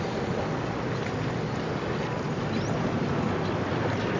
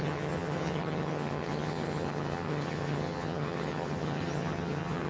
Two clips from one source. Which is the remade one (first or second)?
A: second